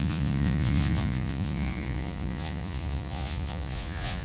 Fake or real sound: fake